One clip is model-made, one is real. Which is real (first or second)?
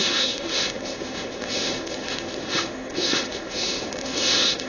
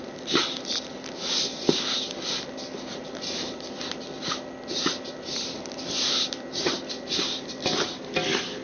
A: second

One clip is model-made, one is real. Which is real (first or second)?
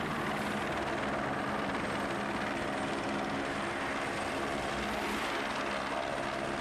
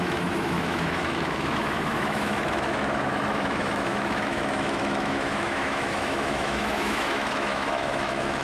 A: first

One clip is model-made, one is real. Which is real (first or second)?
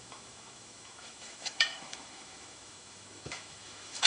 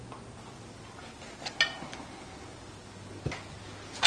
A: second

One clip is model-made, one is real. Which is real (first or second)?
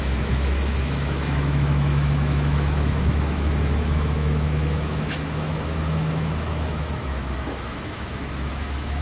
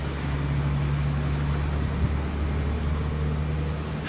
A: second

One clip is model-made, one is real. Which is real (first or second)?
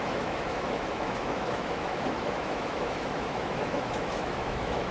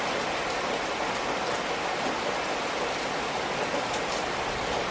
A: second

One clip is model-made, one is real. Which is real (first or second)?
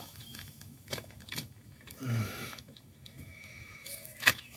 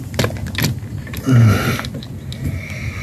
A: second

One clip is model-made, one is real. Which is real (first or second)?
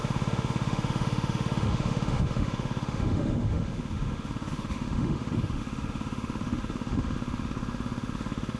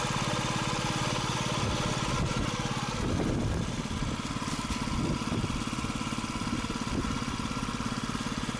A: second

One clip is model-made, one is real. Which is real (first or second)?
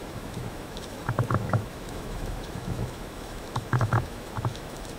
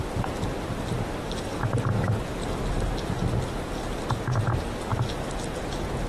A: second